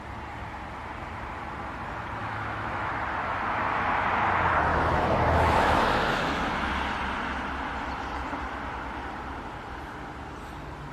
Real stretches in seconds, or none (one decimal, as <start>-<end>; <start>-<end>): 0.0-2.2; 2.9-4.7; 6.7-10.9